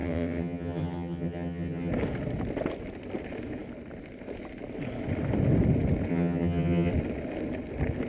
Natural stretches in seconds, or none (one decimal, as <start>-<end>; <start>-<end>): 1.9-6.1; 6.9-8.1